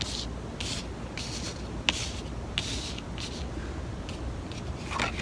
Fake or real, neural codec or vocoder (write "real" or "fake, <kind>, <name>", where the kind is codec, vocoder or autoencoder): real